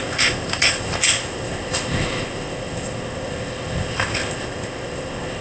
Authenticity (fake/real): fake